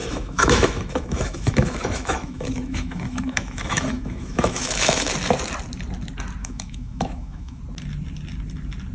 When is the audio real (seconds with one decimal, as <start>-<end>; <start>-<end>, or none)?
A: 5.1-6.4; 7.6-8.9